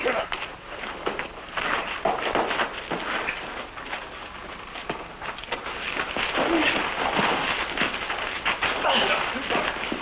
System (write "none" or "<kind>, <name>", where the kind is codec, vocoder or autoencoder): none